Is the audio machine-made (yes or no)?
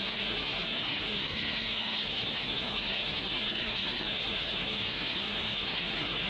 yes